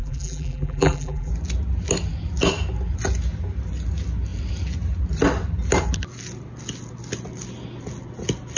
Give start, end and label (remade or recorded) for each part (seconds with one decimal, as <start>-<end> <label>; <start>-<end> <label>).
0.0-1.3 remade; 1.3-8.6 recorded